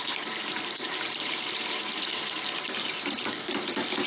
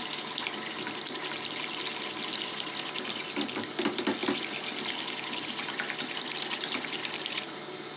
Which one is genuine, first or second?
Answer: second